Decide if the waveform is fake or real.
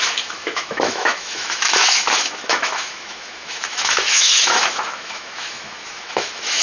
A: fake